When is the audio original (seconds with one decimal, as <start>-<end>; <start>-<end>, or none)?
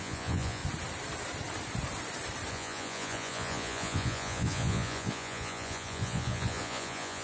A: 0.6-2.5